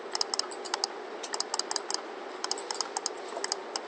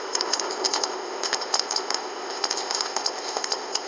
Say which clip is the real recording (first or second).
first